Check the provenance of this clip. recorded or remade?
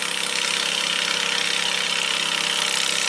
recorded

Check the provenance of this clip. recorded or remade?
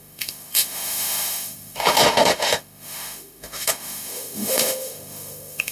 remade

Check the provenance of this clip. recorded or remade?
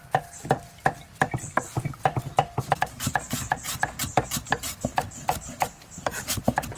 recorded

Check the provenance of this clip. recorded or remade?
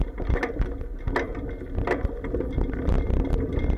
recorded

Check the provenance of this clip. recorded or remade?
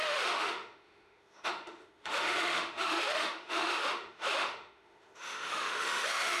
remade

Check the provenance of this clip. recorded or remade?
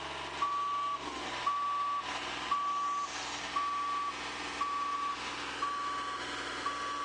recorded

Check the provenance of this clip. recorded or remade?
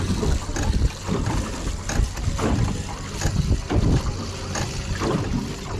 recorded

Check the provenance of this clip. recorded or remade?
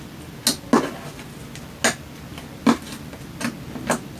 recorded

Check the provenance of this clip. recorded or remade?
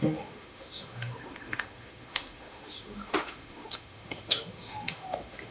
remade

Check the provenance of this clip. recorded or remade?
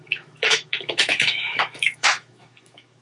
remade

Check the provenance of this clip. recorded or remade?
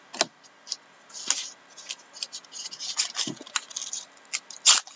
recorded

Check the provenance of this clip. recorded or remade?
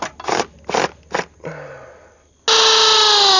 recorded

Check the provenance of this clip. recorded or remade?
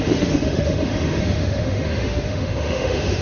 remade